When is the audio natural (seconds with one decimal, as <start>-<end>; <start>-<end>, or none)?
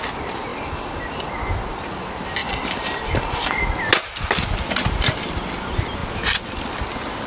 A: 0.0-0.5; 1.3-2.4; 3.6-7.3